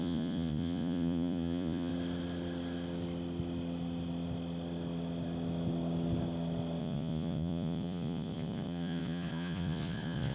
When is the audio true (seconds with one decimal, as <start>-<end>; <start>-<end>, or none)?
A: 1.9-6.8